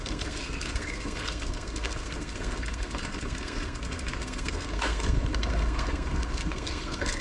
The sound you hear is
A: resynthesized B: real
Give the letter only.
A